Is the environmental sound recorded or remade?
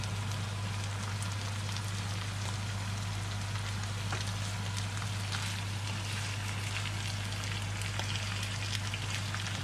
recorded